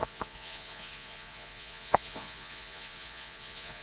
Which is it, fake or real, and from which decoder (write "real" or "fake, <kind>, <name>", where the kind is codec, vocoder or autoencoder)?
fake, vocoder, Vocos